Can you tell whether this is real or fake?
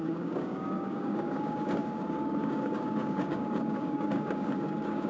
fake